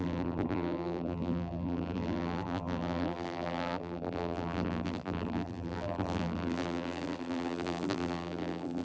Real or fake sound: fake